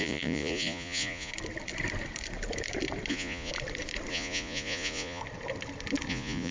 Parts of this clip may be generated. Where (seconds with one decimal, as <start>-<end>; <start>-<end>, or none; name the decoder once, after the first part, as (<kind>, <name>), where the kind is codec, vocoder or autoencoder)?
0.0-1.3 (vocoder, Vocos); 3.1-3.5; 4.1-5.2; 6.1-6.5